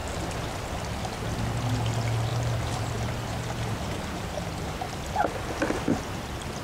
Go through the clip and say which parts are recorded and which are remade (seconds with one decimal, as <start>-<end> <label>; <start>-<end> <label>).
0.0-2.3 recorded; 2.3-4.8 remade; 4.8-6.6 recorded